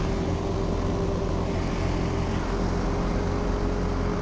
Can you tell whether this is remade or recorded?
recorded